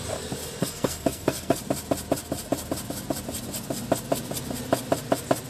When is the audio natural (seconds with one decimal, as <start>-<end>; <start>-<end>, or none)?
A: 0.0-0.6; 1.6-5.5